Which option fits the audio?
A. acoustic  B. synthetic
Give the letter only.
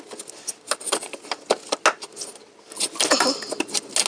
A